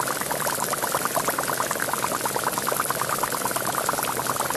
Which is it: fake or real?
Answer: real